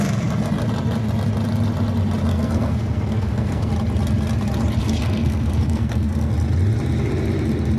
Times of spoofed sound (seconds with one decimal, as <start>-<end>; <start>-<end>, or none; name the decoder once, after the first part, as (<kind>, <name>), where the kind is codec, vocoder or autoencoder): 2.3-3.7 (codec, SNAC); 4.8-6.3

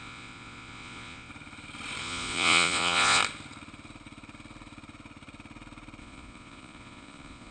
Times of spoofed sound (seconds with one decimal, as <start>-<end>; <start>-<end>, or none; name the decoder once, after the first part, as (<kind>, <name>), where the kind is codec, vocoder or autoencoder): 0.0-1.3 (vocoder, Vocos); 2.0-3.2; 6.0-7.5

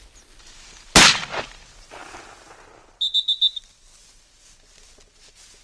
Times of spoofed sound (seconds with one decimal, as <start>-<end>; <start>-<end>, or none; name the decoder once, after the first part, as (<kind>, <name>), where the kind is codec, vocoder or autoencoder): none

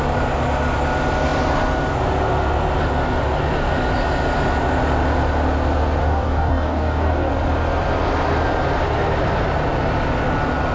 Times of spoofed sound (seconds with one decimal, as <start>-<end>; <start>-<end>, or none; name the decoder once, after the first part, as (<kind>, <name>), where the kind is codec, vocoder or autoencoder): 6.0-7.3 (codec, DAC)

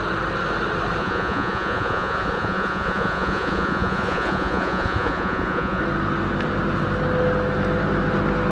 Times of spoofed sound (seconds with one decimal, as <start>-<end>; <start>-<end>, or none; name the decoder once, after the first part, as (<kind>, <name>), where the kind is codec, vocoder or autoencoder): 1.0-5.8 (vocoder, Vocos)

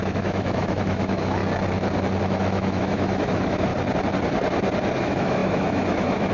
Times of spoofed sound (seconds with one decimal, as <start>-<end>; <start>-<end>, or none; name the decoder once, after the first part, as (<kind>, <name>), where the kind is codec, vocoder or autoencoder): 0.0-1.4 (autoencoder, DAC-VAE); 2.2-3.7; 5.0-6.3

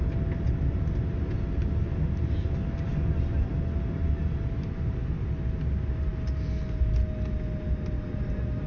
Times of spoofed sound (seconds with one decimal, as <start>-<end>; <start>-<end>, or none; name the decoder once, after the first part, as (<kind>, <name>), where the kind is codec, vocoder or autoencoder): none

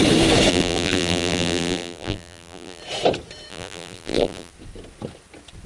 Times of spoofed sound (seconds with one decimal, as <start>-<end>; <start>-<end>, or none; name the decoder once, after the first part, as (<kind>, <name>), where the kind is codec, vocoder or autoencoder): 0.5-2.8 (vocoder, BigVGAN v2); 3.5-4.5